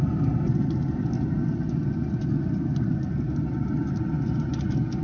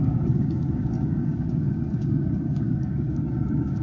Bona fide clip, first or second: first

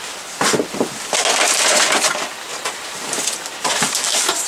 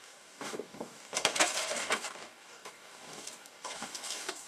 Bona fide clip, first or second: first